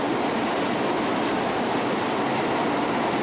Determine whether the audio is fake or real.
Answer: real